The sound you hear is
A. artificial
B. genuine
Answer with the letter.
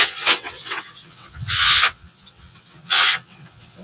A